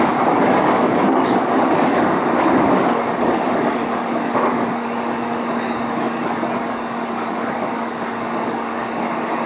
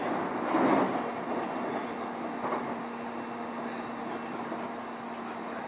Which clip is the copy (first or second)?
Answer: first